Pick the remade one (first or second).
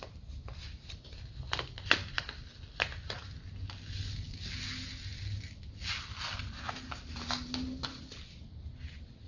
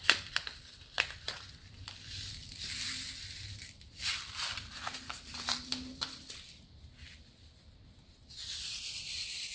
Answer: second